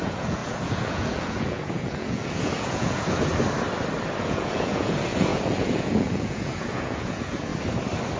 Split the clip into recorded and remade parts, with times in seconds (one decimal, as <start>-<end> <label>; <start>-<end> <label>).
0.0-3.3 remade; 3.3-4.2 recorded; 4.2-7.5 remade; 7.5-8.2 recorded